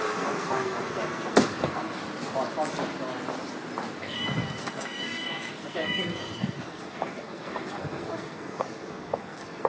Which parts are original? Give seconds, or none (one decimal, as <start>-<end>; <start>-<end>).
2.0-4.0